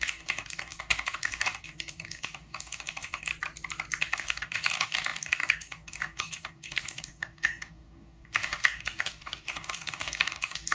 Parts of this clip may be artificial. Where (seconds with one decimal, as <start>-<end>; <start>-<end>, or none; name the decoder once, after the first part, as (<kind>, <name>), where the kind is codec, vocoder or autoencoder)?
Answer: 0.0-3.3 (codec, DAC); 4.0-10.7